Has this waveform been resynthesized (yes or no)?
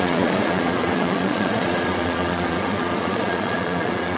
yes